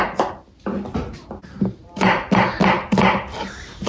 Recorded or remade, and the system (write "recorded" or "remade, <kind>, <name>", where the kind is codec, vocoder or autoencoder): recorded